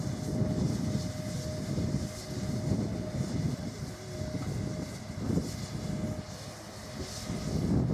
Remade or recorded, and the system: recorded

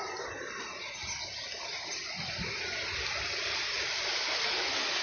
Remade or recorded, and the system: recorded